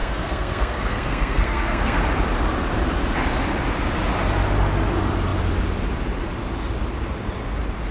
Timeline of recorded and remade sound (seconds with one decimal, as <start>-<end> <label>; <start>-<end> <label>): 0.0-2.0 remade; 2.0-7.9 recorded